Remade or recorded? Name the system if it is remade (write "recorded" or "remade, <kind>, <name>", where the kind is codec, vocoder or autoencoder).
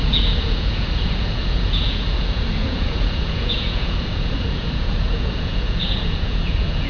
remade, vocoder, Vocos